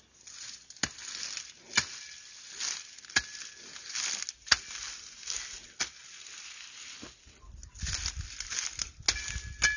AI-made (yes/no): no